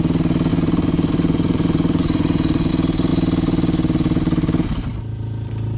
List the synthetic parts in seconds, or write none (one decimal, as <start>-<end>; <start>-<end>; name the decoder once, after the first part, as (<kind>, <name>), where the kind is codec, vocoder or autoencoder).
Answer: 0.5-2.7 (vocoder, Vocos)